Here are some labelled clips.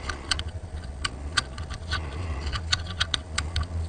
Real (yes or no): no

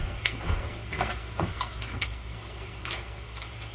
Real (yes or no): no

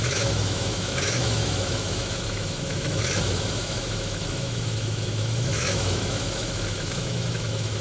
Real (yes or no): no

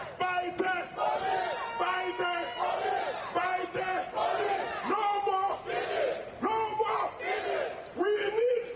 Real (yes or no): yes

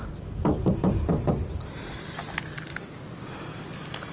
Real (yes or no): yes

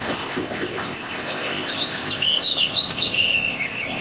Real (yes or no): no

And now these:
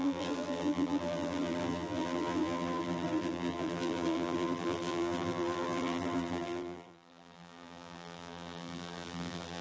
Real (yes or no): no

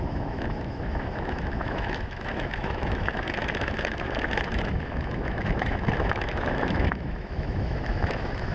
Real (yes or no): no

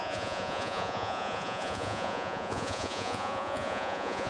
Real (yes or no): no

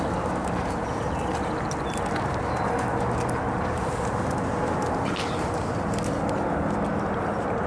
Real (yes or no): yes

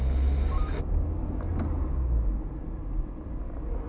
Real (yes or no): yes